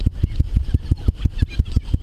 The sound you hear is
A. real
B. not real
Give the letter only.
A